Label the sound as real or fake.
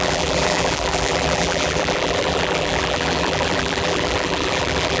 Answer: fake